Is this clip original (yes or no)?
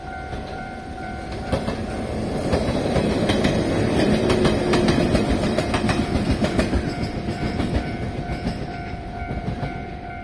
no